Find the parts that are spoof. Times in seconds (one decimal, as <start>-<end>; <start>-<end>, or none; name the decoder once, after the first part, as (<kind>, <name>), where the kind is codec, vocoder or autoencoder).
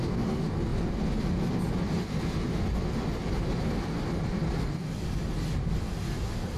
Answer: 3.1-6.6 (vocoder, BigVGAN v2)